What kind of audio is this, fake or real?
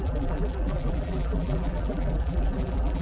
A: fake